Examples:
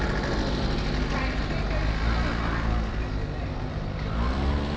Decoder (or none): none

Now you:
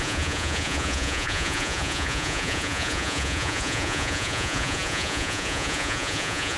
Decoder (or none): vocoder, Vocos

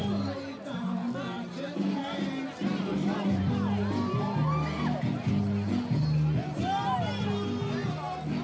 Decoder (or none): none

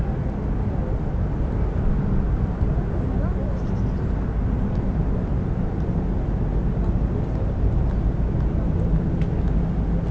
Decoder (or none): none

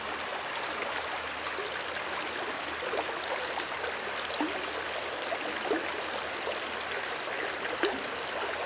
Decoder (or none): none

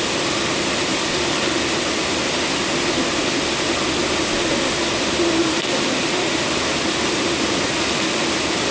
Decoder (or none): none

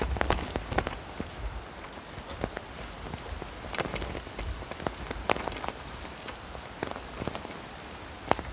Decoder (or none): none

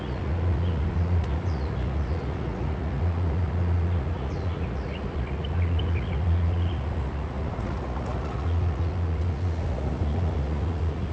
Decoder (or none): vocoder, Vocos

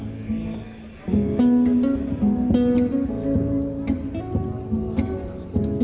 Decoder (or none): none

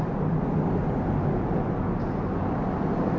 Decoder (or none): none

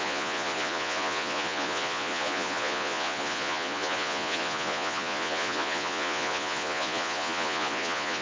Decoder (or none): vocoder, Vocos